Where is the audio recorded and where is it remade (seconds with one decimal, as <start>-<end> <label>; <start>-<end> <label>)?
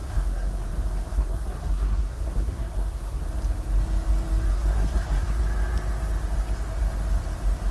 0.0-0.6 remade; 0.6-1.1 recorded; 1.1-3.2 remade; 3.2-4.5 recorded; 4.5-5.4 remade; 5.4-7.7 recorded